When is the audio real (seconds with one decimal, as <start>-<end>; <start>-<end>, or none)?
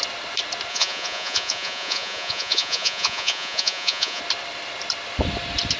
0.0-0.7; 4.2-5.8